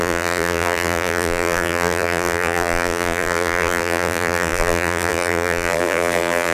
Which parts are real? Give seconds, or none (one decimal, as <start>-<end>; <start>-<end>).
none